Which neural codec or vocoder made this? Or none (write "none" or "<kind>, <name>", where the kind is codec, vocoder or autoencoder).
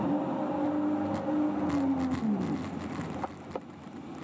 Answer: none